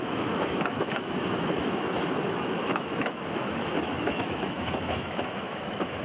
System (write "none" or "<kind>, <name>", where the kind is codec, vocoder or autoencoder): autoencoder, DAC-VAE